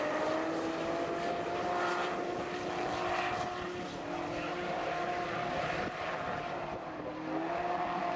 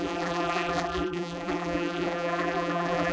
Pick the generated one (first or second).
second